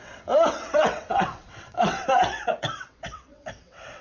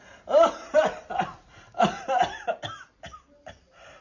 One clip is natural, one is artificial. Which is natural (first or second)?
second